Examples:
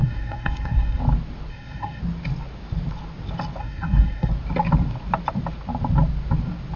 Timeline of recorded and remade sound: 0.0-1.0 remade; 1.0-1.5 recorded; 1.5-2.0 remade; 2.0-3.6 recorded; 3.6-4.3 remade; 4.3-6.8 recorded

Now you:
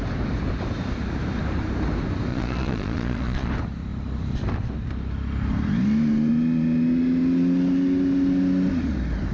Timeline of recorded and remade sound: 0.0-2.3 recorded; 2.3-3.5 remade; 3.5-9.3 recorded

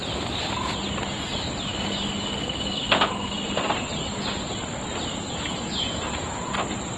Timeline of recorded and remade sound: 0.0-5.1 recorded; 5.1-6.5 remade; 6.5-7.0 recorded

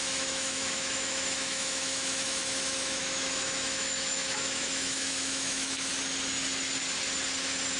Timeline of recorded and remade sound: 0.0-5.9 remade; 5.9-7.8 recorded

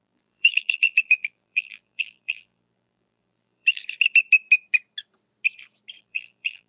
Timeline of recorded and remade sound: 0.0-3.8 remade; 3.8-6.0 recorded; 6.0-6.7 remade

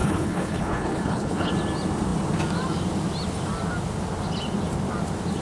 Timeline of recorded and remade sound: 0.0-1.5 remade; 1.5-5.4 recorded

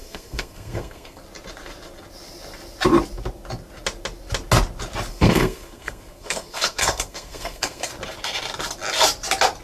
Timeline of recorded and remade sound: 0.0-1.2 remade; 1.2-5.1 recorded; 5.1-7.9 remade; 7.9-9.6 recorded

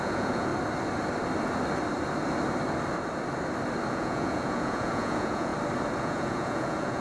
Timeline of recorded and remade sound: 0.0-0.5 remade; 0.5-3.9 recorded; 3.9-5.5 remade; 5.5-6.0 recorded; 6.0-7.0 remade